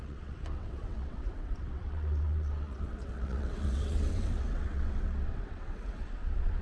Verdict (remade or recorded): remade